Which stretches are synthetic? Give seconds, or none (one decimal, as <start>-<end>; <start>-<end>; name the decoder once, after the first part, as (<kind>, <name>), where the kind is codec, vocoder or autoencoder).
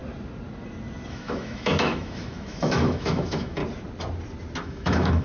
1.1-3.6 (autoencoder, DAC-VAE); 4.6-5.2